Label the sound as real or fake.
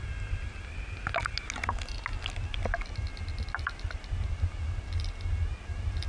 real